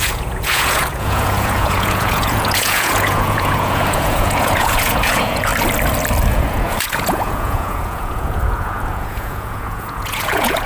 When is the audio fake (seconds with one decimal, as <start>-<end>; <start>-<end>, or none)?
0.0-5.5; 6.3-10.7